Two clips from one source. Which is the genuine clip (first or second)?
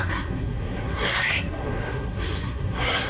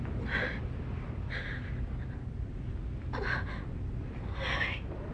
second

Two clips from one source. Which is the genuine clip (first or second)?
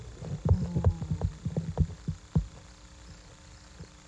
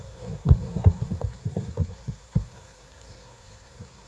first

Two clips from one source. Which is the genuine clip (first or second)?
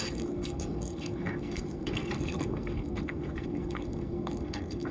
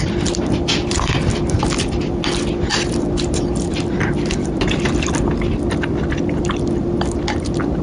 second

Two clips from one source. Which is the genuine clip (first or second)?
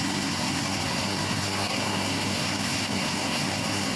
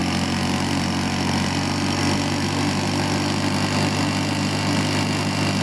second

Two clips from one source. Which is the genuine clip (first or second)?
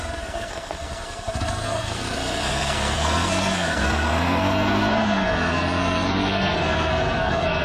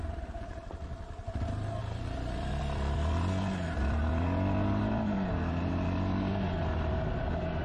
second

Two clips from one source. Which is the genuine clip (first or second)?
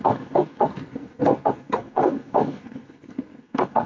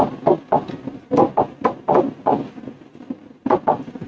second